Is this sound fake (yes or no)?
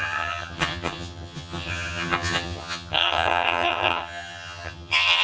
yes